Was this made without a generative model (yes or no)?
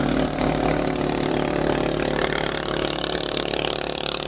no